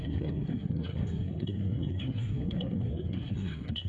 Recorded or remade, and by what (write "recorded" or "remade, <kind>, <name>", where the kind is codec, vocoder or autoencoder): remade, codec, SNAC